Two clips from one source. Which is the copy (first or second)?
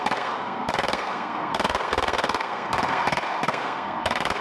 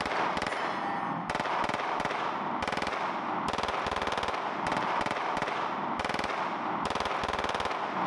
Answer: first